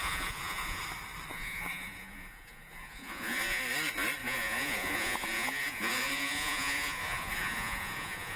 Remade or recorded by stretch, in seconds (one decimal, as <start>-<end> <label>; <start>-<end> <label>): 0.0-0.8 remade; 0.8-1.3 recorded; 1.3-3.6 remade; 3.6-4.2 recorded; 4.2-8.4 remade